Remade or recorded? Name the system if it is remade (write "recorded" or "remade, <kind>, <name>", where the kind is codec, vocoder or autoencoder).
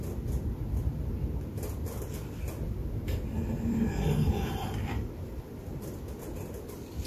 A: recorded